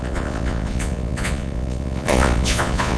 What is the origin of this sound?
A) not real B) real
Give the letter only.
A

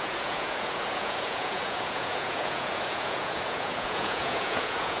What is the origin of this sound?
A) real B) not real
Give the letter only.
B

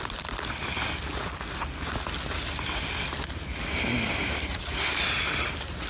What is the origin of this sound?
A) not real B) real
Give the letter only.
B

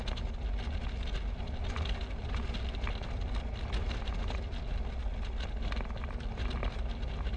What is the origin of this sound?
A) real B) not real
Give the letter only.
A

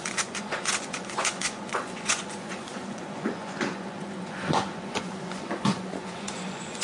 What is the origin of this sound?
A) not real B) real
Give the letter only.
A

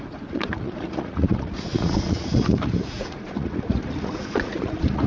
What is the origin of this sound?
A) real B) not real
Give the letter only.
B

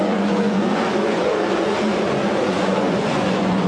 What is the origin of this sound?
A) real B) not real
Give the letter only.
B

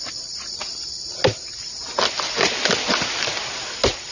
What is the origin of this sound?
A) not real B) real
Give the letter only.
B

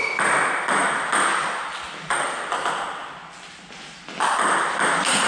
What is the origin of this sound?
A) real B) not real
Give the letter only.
A